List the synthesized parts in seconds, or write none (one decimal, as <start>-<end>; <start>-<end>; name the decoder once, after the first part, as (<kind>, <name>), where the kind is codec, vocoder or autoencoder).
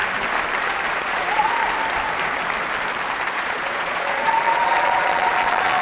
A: 0.9-1.6 (vocoder, Vocos); 3.3-5.8